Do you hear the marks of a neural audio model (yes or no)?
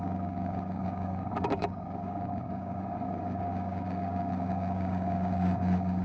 yes